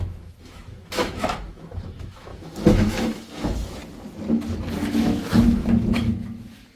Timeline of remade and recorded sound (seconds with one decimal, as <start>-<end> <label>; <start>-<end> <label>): 0.0-3.8 remade; 3.8-4.9 recorded; 4.9-6.8 remade

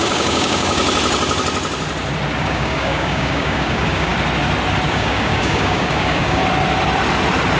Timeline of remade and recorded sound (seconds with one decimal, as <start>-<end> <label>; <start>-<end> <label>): 0.0-0.8 remade; 0.8-2.4 recorded; 2.4-4.1 remade; 4.1-4.9 recorded; 4.9-6.4 remade; 6.4-7.6 recorded